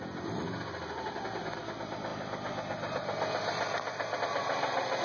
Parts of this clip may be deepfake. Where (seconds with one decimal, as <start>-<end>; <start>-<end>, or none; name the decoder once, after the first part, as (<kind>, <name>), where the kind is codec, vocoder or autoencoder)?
none